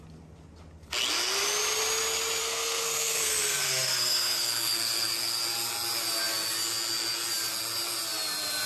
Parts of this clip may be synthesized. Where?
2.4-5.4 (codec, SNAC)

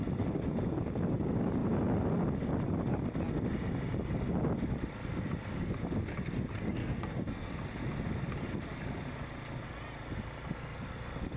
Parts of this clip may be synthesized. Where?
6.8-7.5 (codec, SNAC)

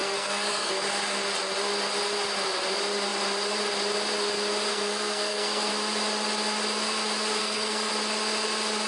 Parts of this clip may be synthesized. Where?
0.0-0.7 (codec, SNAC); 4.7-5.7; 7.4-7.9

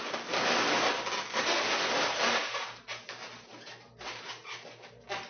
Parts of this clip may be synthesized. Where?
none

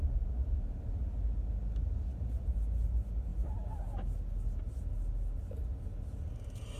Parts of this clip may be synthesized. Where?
none

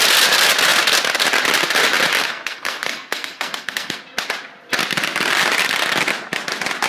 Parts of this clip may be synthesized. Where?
2.2-4.0 (codec, SNAC)